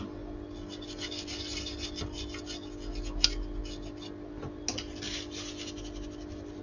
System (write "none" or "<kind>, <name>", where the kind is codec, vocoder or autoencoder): none